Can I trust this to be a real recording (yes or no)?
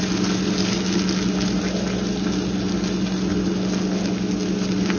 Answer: yes